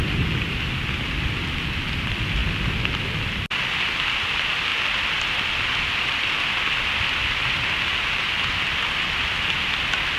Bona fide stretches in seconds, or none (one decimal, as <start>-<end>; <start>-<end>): 0.0-10.2